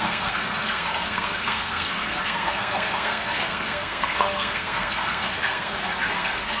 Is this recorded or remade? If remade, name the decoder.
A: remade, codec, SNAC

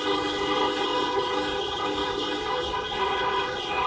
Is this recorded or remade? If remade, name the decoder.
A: remade, codec, HILCodec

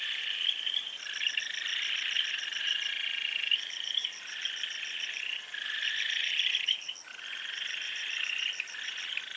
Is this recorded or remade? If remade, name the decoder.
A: recorded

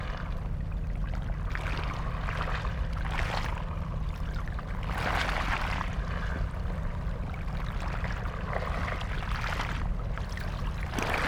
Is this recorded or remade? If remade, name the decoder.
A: recorded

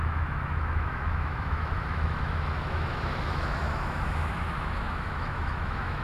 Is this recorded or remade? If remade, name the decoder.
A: remade, autoencoder, DAC-VAE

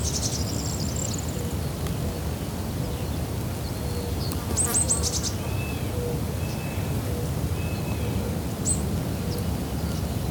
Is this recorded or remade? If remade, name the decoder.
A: recorded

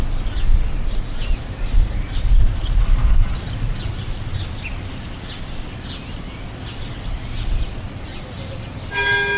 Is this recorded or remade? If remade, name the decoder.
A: recorded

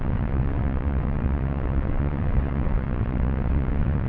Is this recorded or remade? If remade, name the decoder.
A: remade, vocoder, WaveNeXt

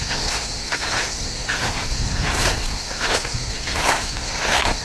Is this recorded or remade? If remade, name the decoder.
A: remade, codec, SNAC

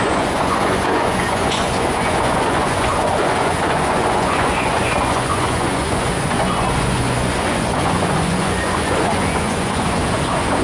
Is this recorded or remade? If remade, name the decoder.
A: remade, vocoder, Vocos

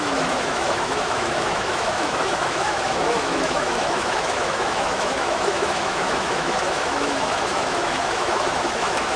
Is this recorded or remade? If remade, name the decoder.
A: remade, autoencoder, DAC-VAE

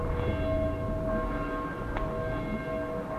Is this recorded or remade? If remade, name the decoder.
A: recorded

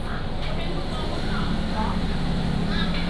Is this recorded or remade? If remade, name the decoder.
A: recorded